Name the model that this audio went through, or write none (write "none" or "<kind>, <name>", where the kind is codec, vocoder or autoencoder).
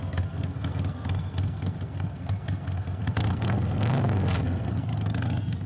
codec, SNAC